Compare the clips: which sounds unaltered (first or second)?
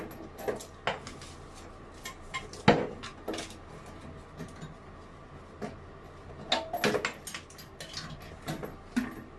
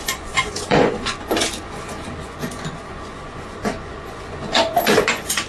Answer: first